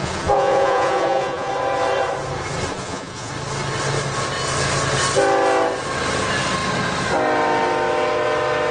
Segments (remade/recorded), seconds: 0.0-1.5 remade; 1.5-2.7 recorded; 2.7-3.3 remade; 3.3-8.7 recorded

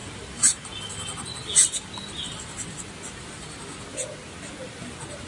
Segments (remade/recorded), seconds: 0.0-5.3 recorded

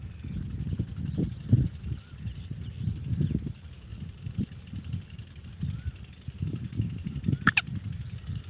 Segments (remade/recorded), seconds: 0.0-8.5 recorded

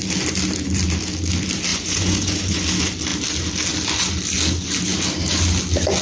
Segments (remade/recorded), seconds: 0.0-1.7 recorded; 1.7-2.6 remade; 2.6-6.0 recorded

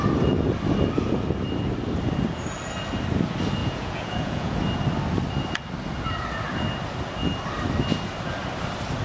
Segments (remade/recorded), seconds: 0.0-3.6 recorded; 3.6-4.6 remade; 4.6-9.0 recorded

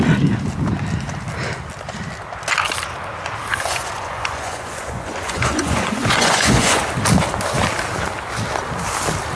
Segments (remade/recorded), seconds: 0.0-3.5 recorded; 3.5-6.8 remade; 6.8-9.4 recorded